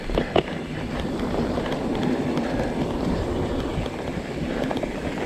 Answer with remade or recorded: remade